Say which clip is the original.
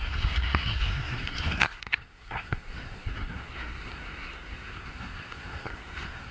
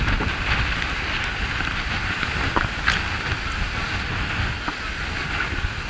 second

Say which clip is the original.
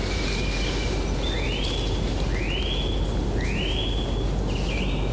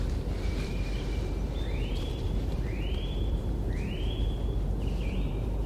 first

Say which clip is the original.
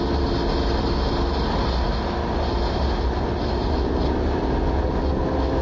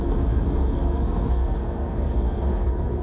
first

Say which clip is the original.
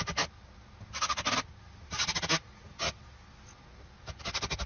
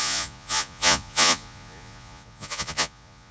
first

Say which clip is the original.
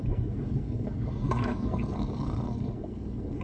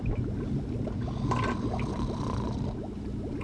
second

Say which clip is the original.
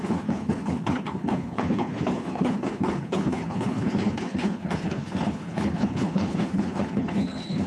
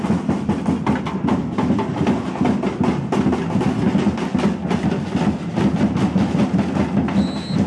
second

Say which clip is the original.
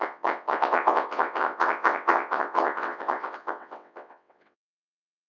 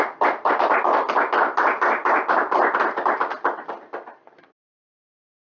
second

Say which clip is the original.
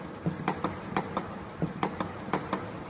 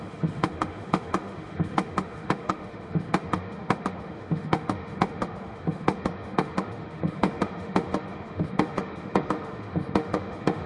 first